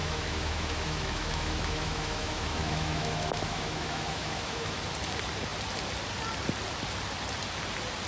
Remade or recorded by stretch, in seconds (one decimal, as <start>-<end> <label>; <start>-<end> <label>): 0.0-4.8 remade; 4.8-8.1 recorded